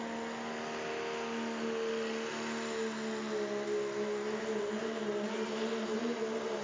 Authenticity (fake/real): real